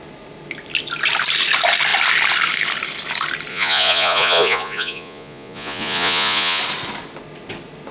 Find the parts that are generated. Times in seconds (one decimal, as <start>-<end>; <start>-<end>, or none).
3.5-6.6